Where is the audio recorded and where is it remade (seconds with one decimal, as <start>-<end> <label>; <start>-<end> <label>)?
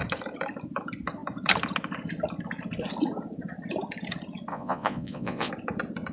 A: 0.0-4.5 recorded; 4.5-5.5 remade; 5.5-6.1 recorded